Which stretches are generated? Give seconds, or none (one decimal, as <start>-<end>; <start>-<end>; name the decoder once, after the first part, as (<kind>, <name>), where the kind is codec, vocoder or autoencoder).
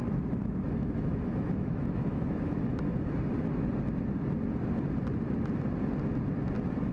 0.0-2.9 (autoencoder, DAC-VAE)